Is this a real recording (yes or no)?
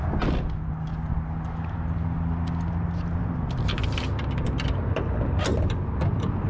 yes